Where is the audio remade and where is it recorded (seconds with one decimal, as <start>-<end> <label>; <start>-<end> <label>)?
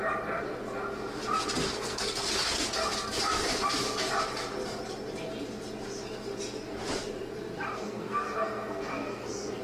0.0-1.7 recorded; 1.7-2.3 remade; 2.3-7.7 recorded; 7.7-9.6 remade